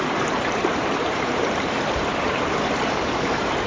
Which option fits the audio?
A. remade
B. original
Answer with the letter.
A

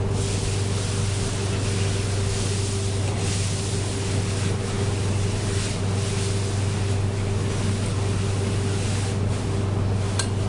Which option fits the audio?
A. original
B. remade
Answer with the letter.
A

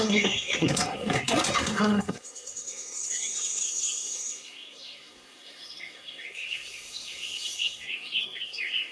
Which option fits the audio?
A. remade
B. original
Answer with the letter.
A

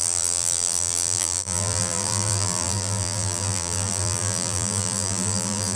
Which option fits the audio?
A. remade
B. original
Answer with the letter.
A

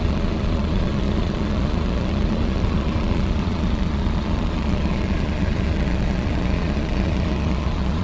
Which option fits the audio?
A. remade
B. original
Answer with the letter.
A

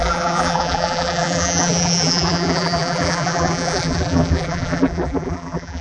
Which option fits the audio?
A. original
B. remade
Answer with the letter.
B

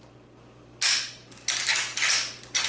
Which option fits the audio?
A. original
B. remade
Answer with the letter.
A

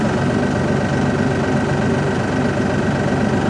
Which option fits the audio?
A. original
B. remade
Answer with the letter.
A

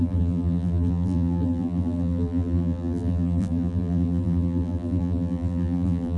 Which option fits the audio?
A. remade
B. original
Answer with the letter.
A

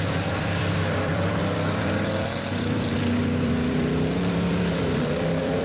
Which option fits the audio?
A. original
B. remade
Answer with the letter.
B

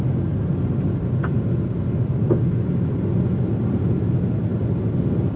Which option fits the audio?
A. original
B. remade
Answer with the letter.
A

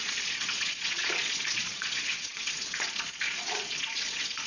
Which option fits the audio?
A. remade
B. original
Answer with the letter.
A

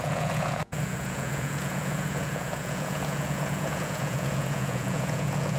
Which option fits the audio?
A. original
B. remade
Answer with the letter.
B